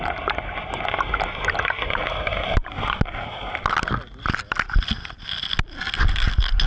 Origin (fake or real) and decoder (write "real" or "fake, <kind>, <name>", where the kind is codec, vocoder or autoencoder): real